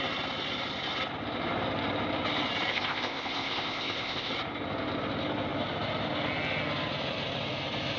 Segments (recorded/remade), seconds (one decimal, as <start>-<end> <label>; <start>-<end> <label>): 0.0-2.7 recorded; 2.7-4.3 remade; 4.3-8.0 recorded